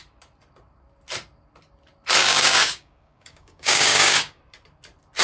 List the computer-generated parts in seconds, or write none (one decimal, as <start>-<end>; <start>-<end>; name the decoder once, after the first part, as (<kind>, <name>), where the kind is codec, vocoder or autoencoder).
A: 2.2-4.4 (codec, DAC)